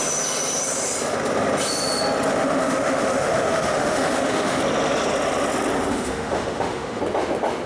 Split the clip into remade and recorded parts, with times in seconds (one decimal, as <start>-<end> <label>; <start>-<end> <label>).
0.0-2.3 recorded; 2.3-4.6 remade; 4.6-5.9 recorded; 5.9-7.0 remade; 7.0-7.7 recorded